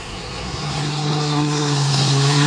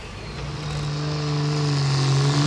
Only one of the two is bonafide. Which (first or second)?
second